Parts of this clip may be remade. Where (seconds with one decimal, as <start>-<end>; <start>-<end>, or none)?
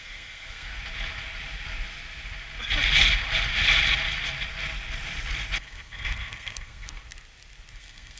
0.0-0.7; 5.6-7.0; 7.7-8.2